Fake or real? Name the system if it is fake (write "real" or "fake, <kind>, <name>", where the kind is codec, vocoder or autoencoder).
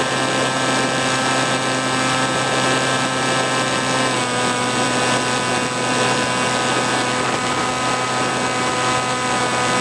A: real